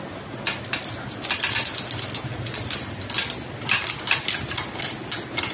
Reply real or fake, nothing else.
real